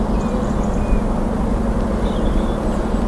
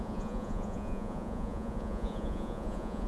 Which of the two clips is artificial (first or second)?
second